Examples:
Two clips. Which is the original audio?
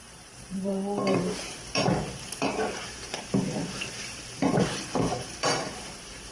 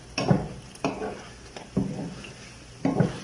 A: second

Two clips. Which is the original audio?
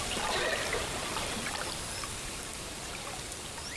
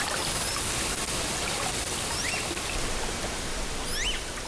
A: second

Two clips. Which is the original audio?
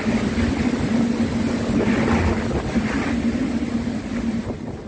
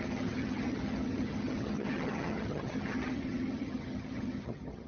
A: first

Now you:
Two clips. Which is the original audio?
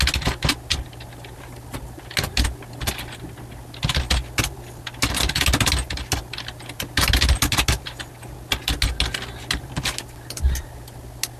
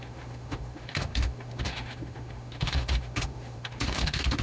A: first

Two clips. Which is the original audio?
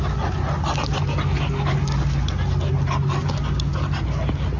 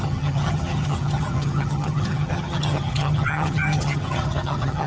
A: first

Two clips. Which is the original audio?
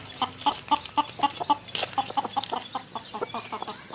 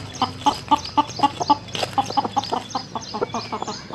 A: second